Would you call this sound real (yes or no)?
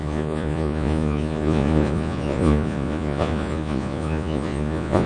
no